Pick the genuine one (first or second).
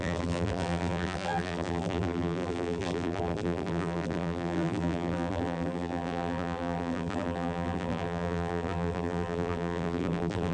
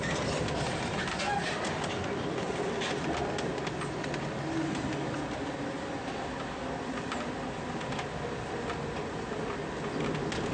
second